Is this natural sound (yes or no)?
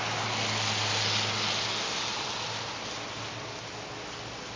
yes